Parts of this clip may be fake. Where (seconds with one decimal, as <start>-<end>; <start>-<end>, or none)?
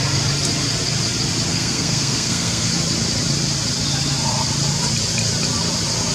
1.5-2.7